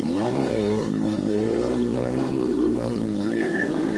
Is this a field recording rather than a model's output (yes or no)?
no